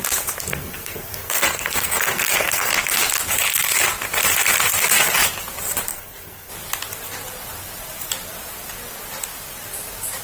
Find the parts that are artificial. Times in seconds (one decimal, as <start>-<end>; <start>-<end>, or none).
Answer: 0.5-2.7; 5.9-6.5

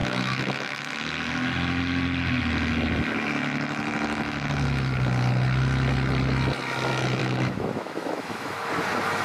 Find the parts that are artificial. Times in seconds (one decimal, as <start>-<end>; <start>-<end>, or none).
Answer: 0.0-0.9; 7.2-8.7

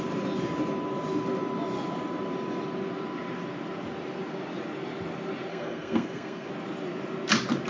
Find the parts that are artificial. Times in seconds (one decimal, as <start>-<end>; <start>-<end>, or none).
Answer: 5.5-6.5

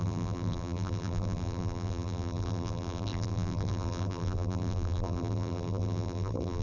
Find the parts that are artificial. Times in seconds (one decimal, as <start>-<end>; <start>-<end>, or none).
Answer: 0.0-6.6